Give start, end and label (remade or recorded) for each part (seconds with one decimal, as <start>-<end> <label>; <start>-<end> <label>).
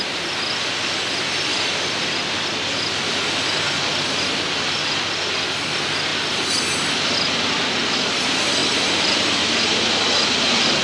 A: 0.0-10.8 recorded